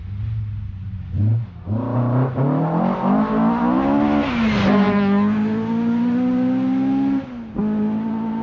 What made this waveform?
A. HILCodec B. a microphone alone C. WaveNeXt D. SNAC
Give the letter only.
B